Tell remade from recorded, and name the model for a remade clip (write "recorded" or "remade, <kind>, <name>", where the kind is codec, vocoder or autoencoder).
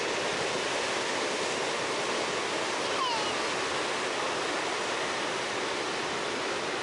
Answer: recorded